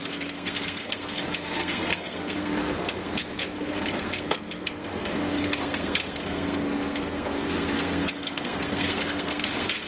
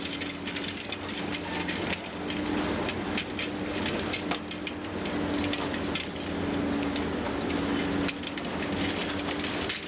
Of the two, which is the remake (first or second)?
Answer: first